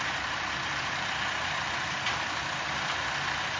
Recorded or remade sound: recorded